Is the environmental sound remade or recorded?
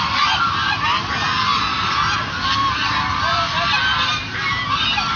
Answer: recorded